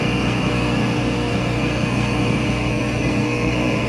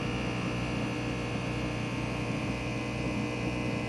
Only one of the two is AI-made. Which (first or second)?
first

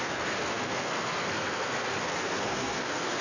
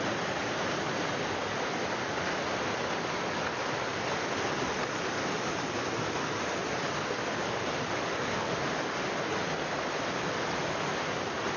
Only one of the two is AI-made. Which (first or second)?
first